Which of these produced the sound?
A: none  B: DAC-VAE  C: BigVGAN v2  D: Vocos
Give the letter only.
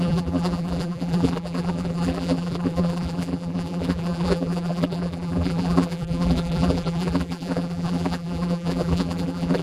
C